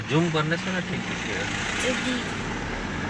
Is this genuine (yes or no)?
yes